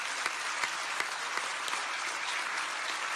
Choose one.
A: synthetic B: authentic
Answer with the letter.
B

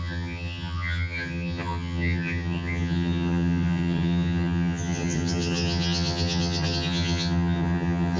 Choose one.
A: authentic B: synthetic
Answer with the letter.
B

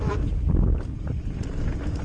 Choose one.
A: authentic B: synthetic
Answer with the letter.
A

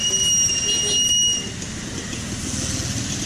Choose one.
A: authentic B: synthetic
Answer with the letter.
A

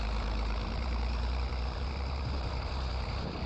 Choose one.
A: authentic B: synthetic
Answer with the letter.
B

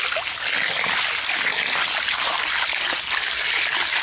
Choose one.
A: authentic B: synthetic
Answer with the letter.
A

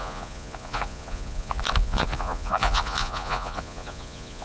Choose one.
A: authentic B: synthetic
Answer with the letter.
B